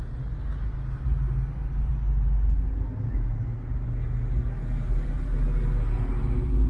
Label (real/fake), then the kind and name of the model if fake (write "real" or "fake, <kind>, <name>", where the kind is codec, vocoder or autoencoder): real